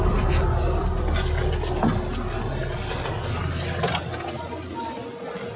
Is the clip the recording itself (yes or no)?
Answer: yes